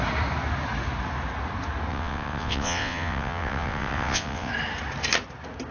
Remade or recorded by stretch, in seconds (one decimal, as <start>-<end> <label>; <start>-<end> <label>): 0.0-1.9 recorded; 1.9-4.5 remade; 4.5-5.7 recorded